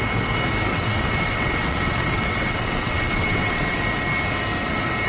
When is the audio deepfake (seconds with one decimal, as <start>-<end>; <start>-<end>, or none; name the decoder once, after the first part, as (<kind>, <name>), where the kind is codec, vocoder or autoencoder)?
0.7-3.8 (vocoder, WaveNeXt)